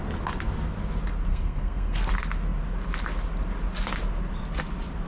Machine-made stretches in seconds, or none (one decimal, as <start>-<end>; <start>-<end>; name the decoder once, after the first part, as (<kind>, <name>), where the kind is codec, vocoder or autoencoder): 1.3-2.1 (codec, SNAC)